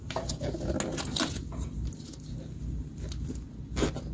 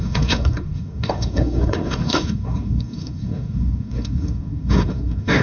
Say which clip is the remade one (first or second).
second